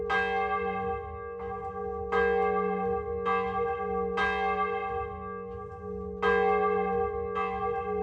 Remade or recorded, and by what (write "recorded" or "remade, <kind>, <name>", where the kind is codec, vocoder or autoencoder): recorded